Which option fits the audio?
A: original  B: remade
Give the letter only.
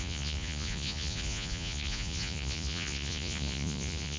B